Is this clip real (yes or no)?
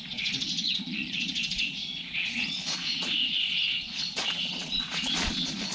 no